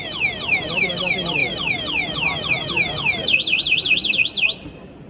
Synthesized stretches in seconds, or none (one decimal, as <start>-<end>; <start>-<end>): 0.0-1.4; 2.5-5.1